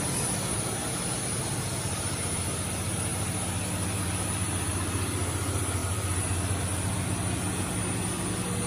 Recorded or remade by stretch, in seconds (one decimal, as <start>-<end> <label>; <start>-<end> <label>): 0.0-8.7 recorded